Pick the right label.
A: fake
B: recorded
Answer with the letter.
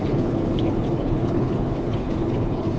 A